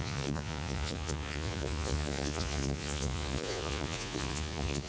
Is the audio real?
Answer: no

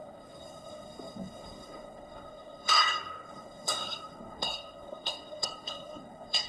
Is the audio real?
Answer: no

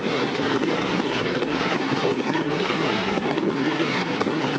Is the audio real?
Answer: no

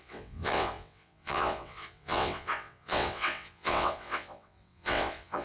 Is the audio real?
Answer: no